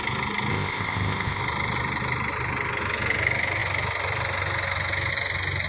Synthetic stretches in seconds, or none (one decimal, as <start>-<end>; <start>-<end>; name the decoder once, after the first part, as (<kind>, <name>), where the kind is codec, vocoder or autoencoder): 0.5-1.4 (codec, ZipCodec)